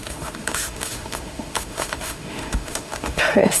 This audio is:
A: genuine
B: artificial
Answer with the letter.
B